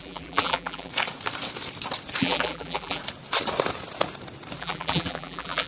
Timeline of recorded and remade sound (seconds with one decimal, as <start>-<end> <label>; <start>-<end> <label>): 0.0-0.9 remade; 0.9-2.2 recorded; 2.2-3.0 remade; 3.0-4.6 recorded; 4.6-5.7 remade